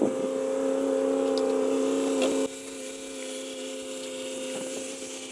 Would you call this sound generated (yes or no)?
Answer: no